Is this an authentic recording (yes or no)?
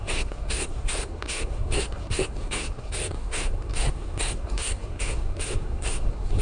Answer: no